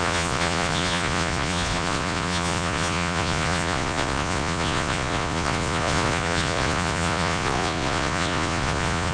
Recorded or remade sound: remade